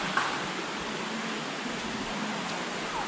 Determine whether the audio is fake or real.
real